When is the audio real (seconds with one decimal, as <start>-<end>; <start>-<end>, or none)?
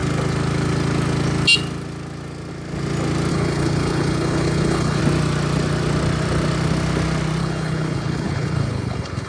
0.0-3.3; 5.0-7.4